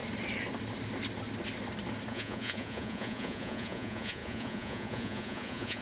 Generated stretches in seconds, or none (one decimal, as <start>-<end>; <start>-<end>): 2.1-5.8